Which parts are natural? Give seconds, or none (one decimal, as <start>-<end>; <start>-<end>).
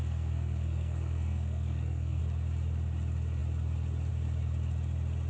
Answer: 2.2-5.3